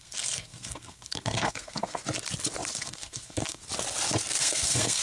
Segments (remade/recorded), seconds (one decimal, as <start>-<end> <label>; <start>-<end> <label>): 0.0-2.0 remade; 2.0-2.8 recorded; 2.8-3.7 remade; 3.7-4.4 recorded; 4.4-5.0 remade